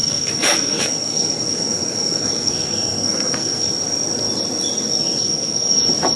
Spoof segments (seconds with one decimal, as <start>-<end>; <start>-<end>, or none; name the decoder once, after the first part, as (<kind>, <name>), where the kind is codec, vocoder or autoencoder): 0.0-3.7 (codec, SNAC); 5.2-5.8